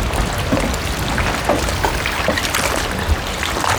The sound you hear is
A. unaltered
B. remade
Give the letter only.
A